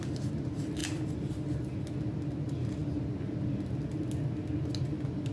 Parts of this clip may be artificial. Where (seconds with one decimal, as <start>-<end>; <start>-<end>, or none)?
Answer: none